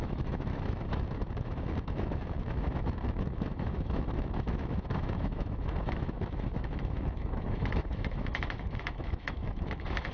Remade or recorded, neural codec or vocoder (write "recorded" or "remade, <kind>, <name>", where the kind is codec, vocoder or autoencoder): remade, autoencoder, DAC-VAE